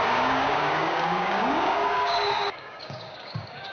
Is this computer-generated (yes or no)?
yes